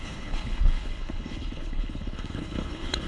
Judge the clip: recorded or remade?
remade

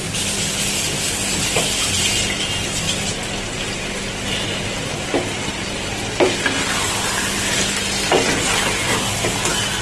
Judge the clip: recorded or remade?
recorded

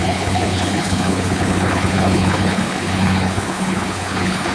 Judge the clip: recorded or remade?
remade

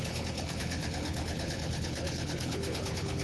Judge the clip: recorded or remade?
remade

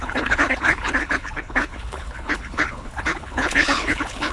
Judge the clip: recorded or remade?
remade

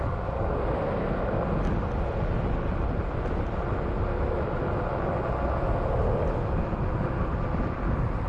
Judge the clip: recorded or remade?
recorded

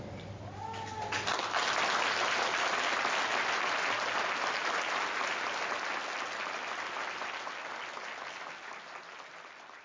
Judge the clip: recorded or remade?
recorded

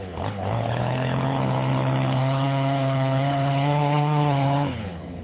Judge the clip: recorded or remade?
remade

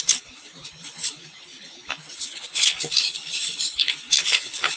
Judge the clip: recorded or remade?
remade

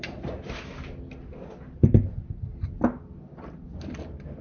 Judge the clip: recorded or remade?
recorded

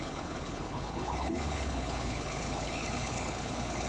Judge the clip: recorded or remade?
remade